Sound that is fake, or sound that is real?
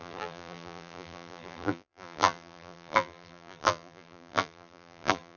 fake